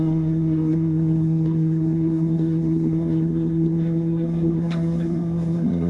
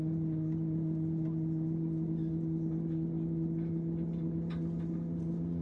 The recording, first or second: second